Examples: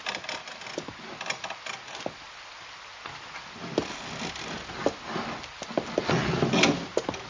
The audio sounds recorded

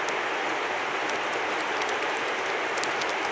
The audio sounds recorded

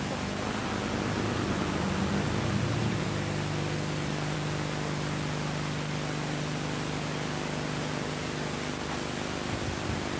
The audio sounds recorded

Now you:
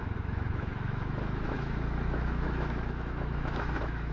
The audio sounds remade